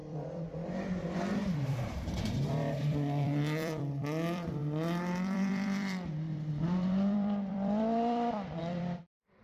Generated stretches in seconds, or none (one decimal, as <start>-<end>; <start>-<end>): 0.0-9.4

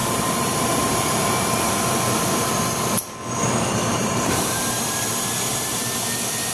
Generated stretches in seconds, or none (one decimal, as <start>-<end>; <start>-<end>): 0.0-2.5; 4.0-5.1

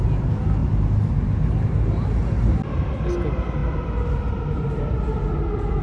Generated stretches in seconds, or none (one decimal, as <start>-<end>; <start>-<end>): 3.6-4.8

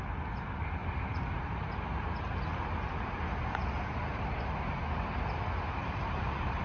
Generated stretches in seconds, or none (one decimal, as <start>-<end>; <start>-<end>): 0.8-2.1; 4.1-4.8; 5.8-6.6

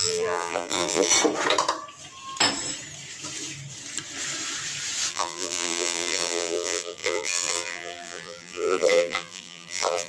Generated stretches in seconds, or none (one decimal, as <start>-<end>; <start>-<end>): 0.0-1.1; 5.1-10.1

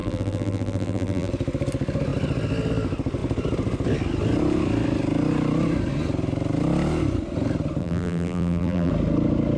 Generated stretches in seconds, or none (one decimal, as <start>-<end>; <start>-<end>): 0.0-1.3; 7.8-8.9